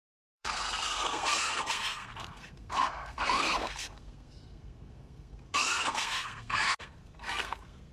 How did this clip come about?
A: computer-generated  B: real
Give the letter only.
A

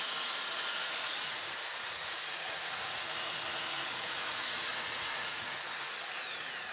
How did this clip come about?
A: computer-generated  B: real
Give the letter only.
A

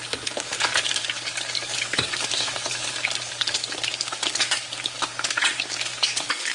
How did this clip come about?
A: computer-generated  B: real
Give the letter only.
A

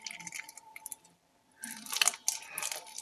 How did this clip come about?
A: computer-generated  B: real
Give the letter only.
B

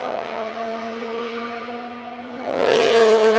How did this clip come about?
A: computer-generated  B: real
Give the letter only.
A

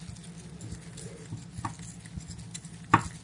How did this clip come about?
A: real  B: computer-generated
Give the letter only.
A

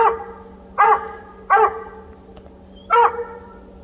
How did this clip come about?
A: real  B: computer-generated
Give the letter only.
A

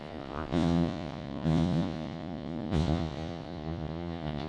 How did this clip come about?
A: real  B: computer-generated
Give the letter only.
B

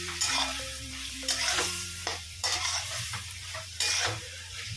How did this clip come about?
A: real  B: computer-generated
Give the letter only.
B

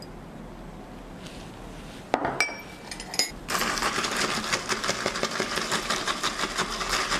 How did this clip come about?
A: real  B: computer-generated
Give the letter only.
A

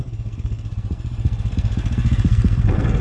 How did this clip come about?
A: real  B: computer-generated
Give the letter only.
B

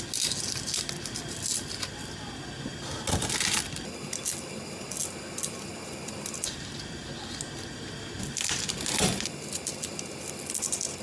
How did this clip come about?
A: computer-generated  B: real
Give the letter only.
B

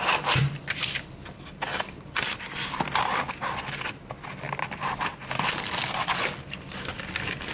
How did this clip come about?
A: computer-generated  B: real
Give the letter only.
B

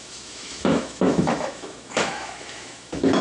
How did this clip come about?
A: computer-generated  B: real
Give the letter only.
A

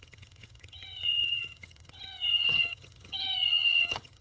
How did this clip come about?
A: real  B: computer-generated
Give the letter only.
B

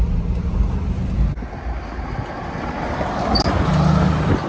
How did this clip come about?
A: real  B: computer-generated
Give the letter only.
A